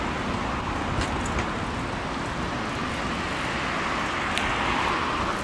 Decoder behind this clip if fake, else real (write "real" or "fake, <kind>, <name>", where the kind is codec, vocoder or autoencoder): real